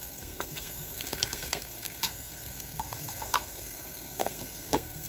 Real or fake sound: fake